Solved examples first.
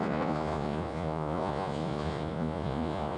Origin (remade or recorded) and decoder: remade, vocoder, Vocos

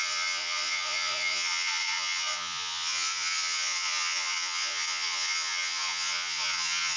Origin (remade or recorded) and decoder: remade, vocoder, Vocos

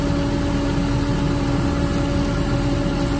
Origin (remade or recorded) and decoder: recorded